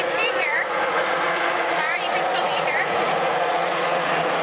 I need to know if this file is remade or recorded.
remade